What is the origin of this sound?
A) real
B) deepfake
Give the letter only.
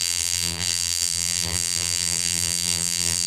B